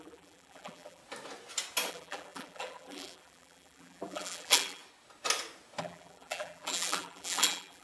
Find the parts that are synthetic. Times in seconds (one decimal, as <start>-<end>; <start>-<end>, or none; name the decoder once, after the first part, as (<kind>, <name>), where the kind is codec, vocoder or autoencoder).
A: 0.0-1.0 (vocoder, BigVGAN v2); 1.9-4.8; 5.8-7.8